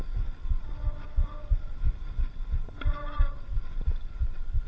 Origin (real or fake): real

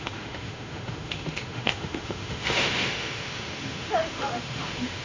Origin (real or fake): fake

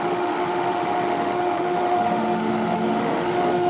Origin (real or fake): fake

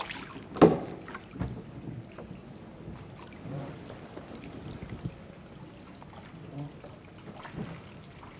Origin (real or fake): real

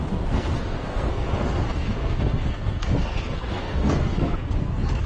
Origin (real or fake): fake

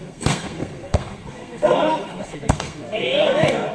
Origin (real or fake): fake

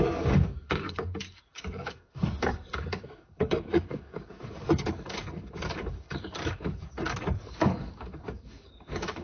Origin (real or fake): fake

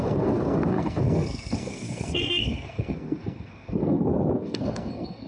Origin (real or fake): fake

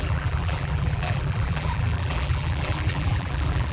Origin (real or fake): fake